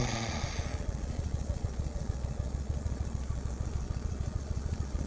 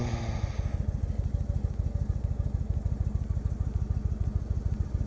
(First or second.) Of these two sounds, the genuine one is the second